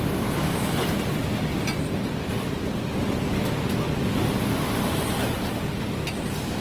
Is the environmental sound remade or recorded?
recorded